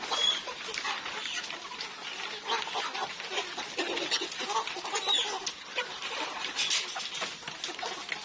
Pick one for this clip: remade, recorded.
recorded